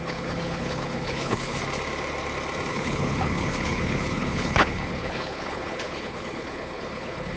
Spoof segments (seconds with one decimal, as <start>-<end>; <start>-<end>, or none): 0.0-1.6; 2.7-7.4